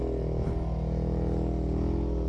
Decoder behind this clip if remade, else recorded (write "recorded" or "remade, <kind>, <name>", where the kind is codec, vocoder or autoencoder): recorded